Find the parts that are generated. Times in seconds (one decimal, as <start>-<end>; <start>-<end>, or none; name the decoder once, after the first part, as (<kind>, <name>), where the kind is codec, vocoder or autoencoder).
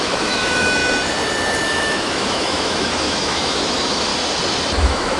0.0-0.8 (autoencoder, DAC-VAE); 1.7-4.1; 4.8-5.2